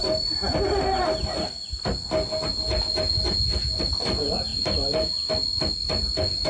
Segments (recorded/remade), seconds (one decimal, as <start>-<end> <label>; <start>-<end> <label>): 0.0-6.5 recorded